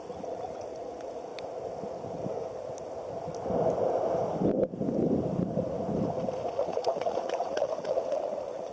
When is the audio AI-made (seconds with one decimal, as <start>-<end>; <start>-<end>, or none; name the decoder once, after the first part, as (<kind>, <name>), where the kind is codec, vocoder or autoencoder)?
0.0-1.3 (vocoder, Vocos); 6.5-8.7